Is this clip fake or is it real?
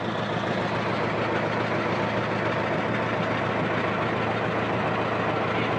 real